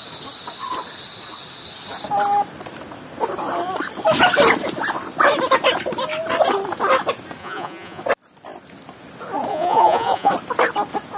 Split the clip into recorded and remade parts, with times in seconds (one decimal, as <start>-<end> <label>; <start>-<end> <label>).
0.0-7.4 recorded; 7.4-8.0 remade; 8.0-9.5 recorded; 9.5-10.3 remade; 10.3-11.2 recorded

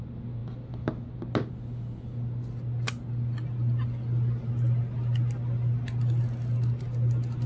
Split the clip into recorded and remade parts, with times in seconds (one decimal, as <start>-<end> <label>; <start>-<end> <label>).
0.0-7.5 recorded

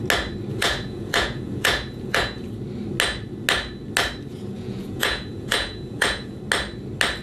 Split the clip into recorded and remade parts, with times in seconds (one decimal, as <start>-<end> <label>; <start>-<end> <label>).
0.0-0.5 recorded; 0.5-2.5 remade; 2.5-4.3 recorded; 4.3-6.4 remade; 6.4-7.2 recorded

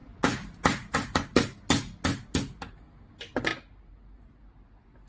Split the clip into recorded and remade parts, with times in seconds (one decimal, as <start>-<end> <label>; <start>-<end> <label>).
0.0-5.1 recorded